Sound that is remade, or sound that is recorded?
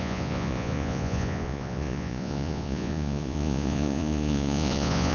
remade